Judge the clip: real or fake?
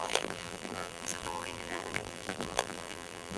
fake